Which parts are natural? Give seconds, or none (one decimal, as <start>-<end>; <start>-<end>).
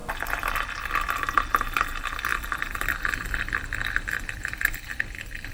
1.2-2.3; 4.8-5.5